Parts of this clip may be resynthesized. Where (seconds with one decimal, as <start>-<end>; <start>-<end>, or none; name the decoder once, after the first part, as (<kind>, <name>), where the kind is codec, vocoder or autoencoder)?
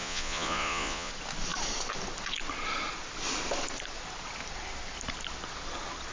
0.0-1.1 (vocoder, Vocos)